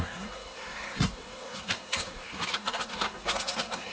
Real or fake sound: fake